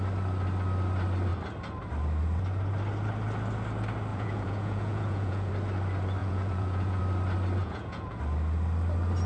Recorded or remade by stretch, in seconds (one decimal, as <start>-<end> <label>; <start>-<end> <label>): 0.0-4.1 recorded; 4.1-5.5 remade; 5.5-6.2 recorded; 6.2-7.0 remade; 7.0-7.6 recorded; 7.6-8.2 remade; 8.2-9.3 recorded